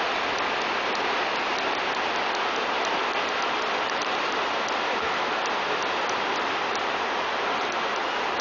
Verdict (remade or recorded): recorded